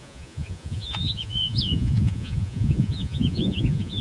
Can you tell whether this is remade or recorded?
remade